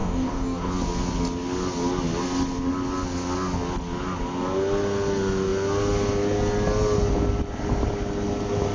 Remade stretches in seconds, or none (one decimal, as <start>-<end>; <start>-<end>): 0.0-0.7